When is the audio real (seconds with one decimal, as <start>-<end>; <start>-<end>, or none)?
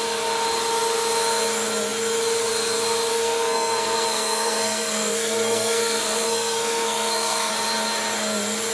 0.0-3.1; 7.5-8.7